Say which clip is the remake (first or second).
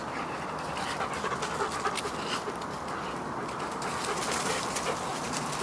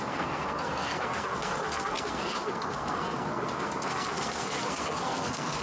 second